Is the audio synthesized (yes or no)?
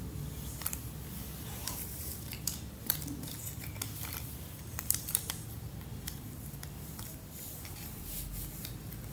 yes